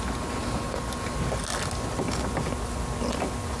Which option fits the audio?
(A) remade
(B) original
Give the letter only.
B